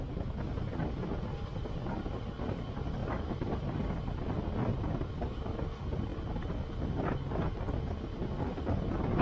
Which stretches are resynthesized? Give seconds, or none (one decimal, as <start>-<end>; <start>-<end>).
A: 3.0-3.9